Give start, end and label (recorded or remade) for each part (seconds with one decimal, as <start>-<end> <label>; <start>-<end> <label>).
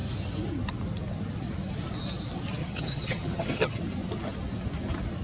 0.0-2.6 recorded; 2.6-3.8 remade; 3.8-5.2 recorded